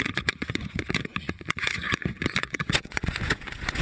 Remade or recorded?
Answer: remade